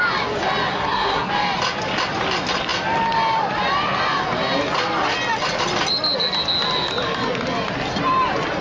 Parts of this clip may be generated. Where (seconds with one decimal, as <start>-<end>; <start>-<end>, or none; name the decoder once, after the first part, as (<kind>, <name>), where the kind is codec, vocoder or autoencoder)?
0.7-1.3 (codec, SNAC)